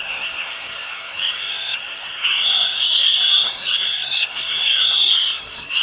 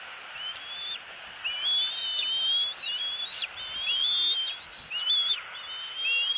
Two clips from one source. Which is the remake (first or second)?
first